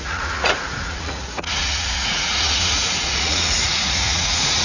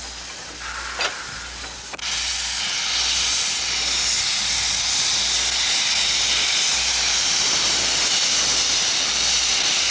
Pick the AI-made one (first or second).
first